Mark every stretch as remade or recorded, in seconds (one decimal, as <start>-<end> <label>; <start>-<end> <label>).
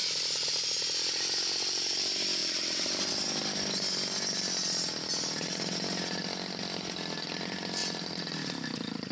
0.0-2.4 recorded; 2.4-3.1 remade; 3.1-9.1 recorded